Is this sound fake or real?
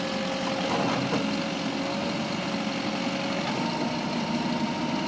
real